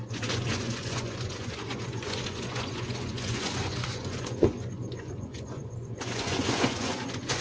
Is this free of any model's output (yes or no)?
no